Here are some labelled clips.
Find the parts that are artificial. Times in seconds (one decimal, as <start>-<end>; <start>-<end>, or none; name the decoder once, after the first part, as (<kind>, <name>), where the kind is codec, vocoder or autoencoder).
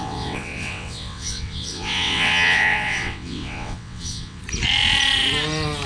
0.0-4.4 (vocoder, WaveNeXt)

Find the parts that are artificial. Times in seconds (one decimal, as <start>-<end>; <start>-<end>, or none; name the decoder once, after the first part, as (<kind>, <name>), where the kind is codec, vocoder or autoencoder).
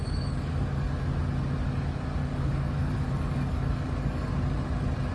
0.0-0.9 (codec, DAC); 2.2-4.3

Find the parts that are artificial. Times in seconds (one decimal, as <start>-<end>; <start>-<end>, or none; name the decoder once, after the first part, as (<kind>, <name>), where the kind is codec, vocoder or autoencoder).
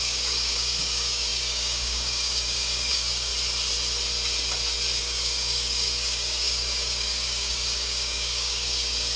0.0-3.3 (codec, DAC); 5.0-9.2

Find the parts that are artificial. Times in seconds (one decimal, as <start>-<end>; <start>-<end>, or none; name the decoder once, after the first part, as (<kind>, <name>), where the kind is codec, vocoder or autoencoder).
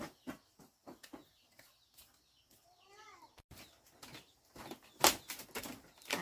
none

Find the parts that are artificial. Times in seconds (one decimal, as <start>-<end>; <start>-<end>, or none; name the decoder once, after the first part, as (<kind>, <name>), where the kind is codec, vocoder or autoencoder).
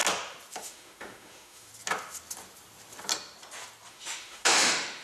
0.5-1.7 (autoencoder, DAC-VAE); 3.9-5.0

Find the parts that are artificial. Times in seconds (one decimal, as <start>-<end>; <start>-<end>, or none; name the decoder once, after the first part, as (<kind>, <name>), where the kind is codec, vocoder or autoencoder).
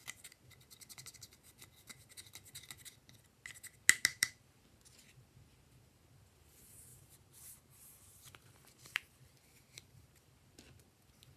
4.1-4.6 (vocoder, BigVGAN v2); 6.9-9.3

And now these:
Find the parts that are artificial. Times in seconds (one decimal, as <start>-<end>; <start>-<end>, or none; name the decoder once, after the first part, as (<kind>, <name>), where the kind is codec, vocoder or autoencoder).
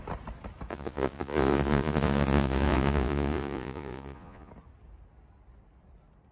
0.7-4.5 (vocoder, Vocos)